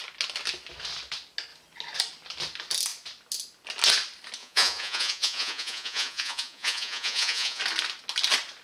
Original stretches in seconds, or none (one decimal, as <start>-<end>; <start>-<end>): 0.0-4.4; 7.6-8.6